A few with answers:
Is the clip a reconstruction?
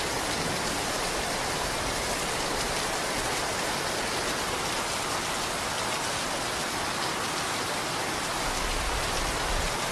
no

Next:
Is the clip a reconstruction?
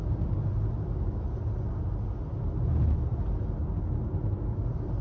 no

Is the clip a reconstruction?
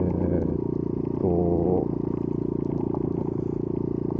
no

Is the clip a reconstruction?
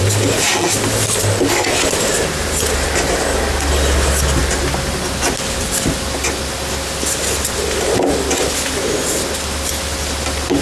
no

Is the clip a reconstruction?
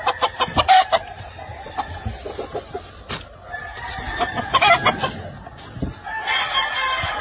no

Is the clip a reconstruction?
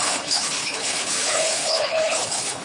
yes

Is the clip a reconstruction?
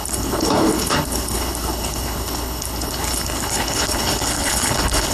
yes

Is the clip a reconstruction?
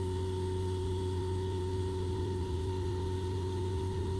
no